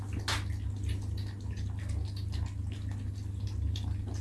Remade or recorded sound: recorded